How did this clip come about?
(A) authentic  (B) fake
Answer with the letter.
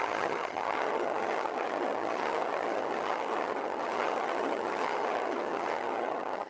B